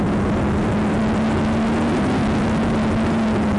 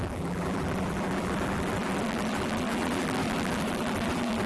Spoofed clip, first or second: second